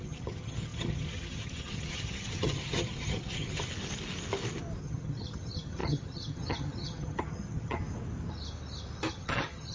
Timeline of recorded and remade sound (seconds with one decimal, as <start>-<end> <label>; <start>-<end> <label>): 0.0-3.7 remade; 3.7-4.8 recorded; 4.8-7.8 remade; 7.8-9.1 recorded; 9.1-9.7 remade